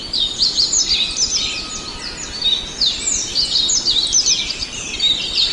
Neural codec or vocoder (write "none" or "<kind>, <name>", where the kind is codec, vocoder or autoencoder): none